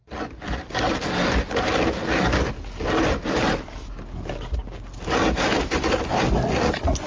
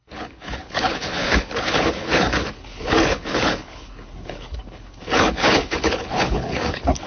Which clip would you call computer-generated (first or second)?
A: second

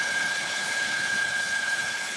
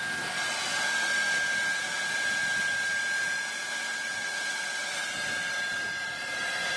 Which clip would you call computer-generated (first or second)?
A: first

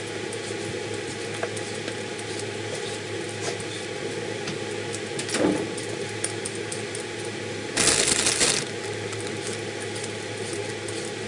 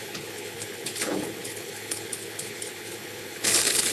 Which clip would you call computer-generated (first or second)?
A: second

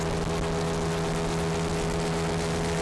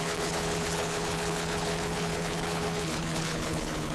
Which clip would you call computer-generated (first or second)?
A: second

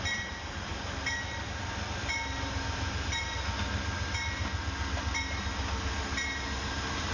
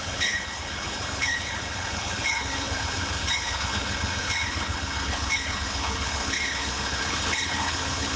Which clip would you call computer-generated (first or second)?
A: second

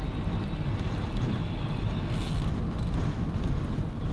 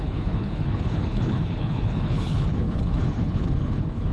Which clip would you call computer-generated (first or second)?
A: second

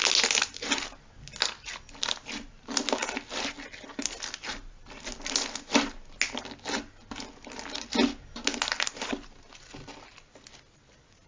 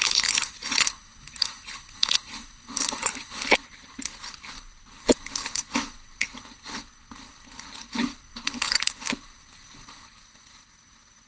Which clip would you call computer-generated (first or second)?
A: second